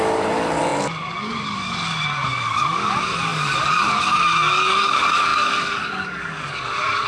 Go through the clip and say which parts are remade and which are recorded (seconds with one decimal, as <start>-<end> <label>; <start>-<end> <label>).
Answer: 0.0-7.1 remade